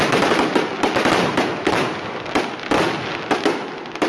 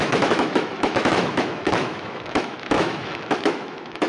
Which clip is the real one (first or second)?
first